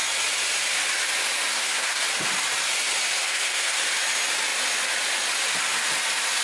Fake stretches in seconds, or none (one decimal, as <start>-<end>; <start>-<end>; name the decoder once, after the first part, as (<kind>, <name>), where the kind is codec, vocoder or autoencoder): 1.5-2.0 (codec, SNAC); 3.2-3.8